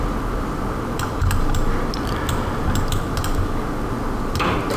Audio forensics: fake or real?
real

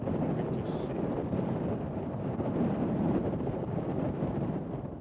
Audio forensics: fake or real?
real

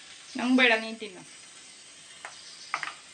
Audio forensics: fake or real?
real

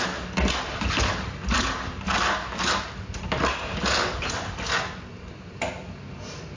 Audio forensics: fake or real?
real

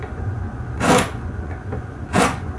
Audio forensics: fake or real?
fake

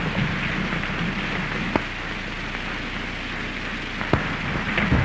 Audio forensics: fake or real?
real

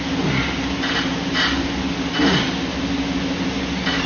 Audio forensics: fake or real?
real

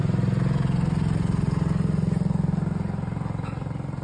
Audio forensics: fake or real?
real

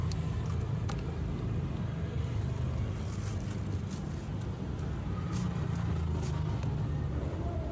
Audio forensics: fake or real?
real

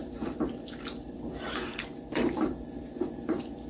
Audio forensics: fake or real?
fake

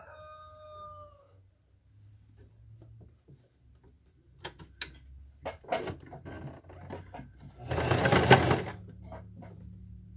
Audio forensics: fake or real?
real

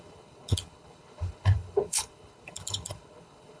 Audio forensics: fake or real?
fake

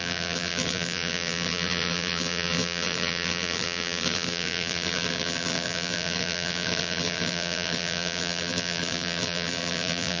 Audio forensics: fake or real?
fake